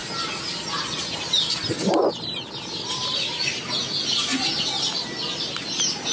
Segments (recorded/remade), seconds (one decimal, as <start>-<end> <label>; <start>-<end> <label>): 0.0-3.7 remade; 3.7-6.1 recorded

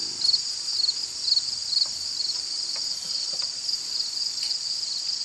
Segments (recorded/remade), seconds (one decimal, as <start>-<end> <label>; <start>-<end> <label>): 0.0-0.7 recorded; 0.7-5.2 remade